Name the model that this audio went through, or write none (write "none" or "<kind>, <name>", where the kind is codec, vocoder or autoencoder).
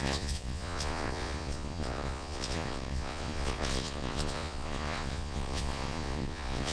vocoder, Vocos